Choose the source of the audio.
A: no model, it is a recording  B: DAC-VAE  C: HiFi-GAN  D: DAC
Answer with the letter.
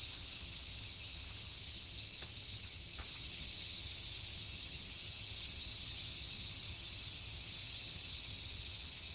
C